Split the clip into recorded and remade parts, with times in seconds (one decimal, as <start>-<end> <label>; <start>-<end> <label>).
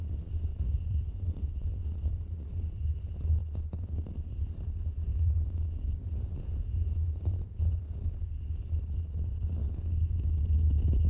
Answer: 0.0-0.5 recorded; 0.5-1.8 remade; 1.8-5.1 recorded; 5.1-8.4 remade; 8.4-11.1 recorded